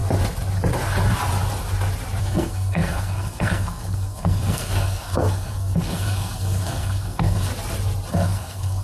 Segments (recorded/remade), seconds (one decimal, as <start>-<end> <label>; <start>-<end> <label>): 0.0-2.2 recorded; 2.2-7.5 remade; 7.5-8.1 recorded; 8.1-8.8 remade